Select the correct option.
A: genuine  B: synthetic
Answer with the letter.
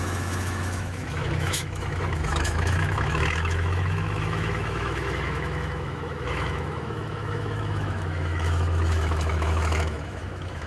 B